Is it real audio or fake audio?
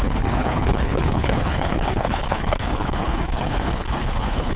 fake